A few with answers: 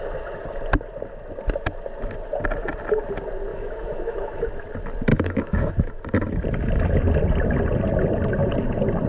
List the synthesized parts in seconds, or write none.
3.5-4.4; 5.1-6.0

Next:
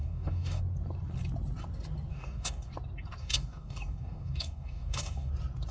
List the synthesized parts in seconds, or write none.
0.0-0.6; 2.1-2.7; 3.2-5.3

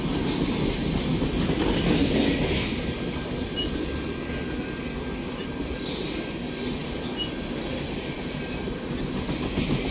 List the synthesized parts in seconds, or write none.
none

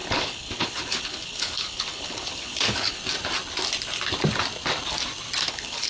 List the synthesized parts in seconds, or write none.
0.0-3.0; 5.5-5.9

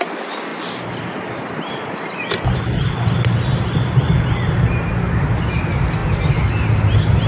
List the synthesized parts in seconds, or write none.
0.5-4.9

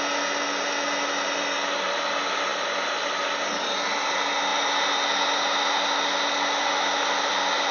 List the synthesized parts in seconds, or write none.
none

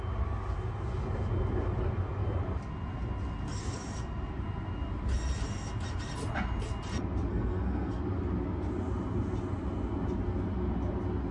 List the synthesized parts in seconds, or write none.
7.3-8.0